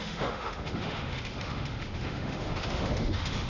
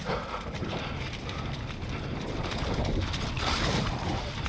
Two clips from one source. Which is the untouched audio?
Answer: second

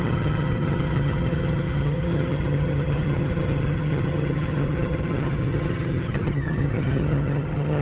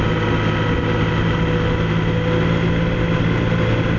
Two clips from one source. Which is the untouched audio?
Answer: second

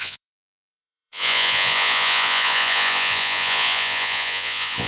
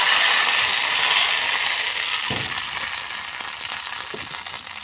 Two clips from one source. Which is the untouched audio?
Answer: second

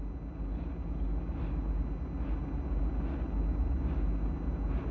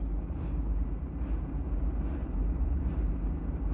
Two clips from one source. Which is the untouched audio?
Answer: first